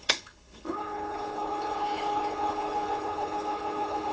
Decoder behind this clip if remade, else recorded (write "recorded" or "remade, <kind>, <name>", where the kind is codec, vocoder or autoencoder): remade, codec, HILCodec